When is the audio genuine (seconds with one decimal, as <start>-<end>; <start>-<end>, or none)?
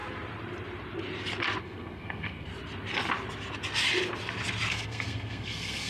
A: 0.0-1.6; 2.5-4.7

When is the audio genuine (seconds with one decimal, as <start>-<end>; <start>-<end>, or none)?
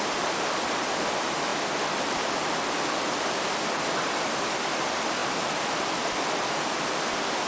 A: 1.5-2.4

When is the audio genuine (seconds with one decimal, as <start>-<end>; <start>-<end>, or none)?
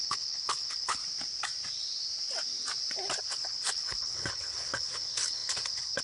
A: 1.0-3.2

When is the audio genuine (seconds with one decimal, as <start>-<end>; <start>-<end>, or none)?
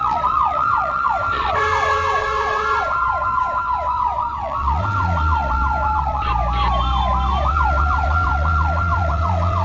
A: 6.3-7.5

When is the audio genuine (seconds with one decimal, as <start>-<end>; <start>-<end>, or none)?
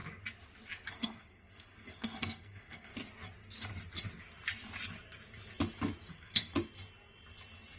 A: 0.0-0.9; 2.9-6.1; 6.5-7.8